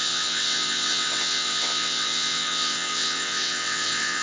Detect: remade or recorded remade